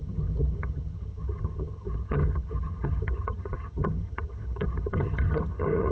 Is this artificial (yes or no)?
yes